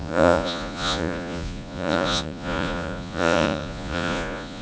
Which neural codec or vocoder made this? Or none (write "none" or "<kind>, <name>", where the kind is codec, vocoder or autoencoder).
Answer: vocoder, Vocos